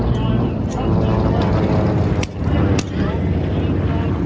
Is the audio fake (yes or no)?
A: no